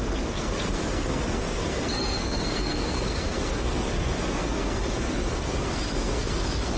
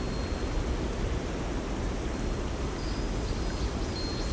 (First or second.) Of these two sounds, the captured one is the second